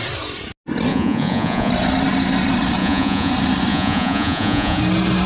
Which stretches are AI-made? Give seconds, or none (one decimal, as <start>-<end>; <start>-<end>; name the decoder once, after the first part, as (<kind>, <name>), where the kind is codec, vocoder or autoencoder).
0.9-1.7 (vocoder, Vocos); 2.8-3.3; 3.7-4.8